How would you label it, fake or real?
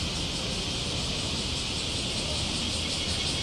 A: real